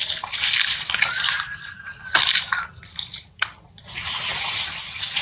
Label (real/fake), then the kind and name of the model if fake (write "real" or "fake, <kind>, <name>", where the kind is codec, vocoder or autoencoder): real